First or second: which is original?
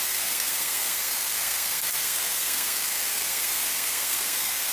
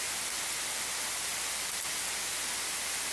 second